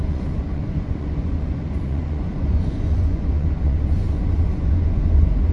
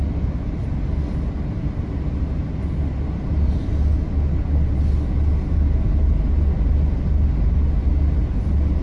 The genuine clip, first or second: second